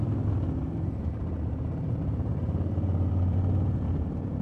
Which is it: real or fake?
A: fake